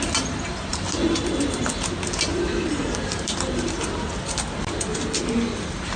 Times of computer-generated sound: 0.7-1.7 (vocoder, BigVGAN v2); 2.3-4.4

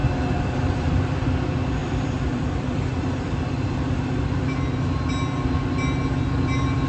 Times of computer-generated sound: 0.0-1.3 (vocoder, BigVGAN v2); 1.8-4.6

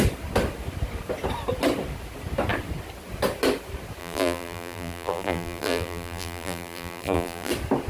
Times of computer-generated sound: 4.0-7.5 (vocoder, BigVGAN v2)

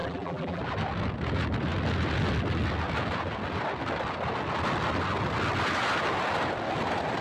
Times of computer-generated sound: 0.0-0.6 (vocoder, BigVGAN v2)

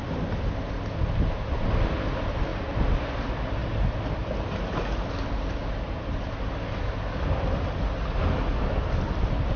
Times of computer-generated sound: 2.5-3.2 (vocoder, BigVGAN v2)

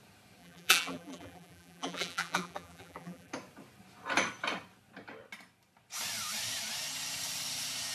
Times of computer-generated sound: 0.4-3.3 (vocoder, BigVGAN v2)